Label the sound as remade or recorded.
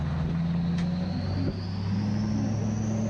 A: recorded